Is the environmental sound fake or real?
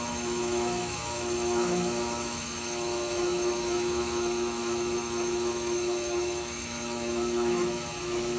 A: fake